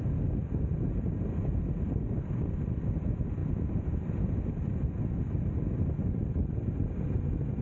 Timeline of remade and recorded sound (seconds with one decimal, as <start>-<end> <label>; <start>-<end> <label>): 0.0-7.6 recorded